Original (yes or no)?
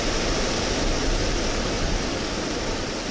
yes